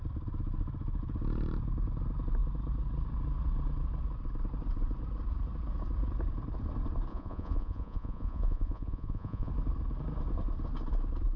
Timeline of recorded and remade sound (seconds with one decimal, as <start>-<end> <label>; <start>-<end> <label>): 0.0-7.1 recorded; 7.1-9.5 remade; 9.5-11.4 recorded